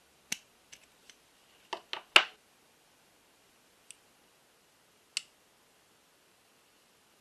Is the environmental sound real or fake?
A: real